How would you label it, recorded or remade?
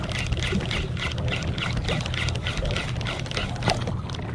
recorded